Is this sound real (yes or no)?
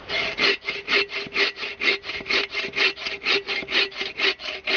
no